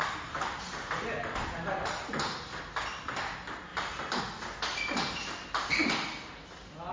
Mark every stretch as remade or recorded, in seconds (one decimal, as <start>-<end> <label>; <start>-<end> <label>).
0.0-2.1 remade; 2.1-3.7 recorded; 3.7-4.2 remade; 4.2-6.9 recorded